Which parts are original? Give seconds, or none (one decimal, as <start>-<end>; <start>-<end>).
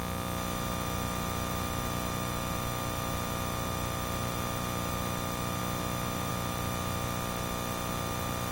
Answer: 0.0-8.5